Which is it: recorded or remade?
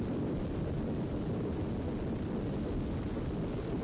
recorded